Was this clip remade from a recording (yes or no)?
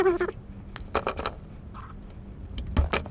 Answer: no